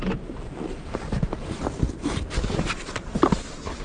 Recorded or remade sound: remade